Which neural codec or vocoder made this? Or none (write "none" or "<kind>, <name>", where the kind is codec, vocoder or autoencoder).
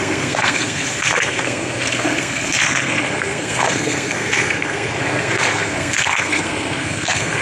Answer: codec, SNAC